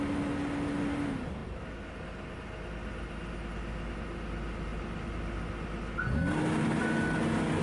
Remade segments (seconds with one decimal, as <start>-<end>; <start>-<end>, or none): none